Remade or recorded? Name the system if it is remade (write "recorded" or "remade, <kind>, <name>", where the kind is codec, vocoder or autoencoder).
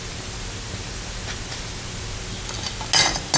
recorded